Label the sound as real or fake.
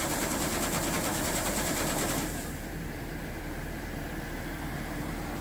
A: fake